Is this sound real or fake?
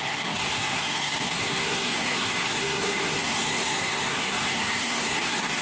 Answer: fake